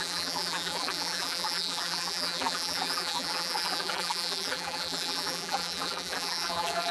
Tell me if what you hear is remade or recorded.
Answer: remade